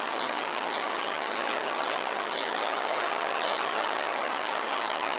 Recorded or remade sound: remade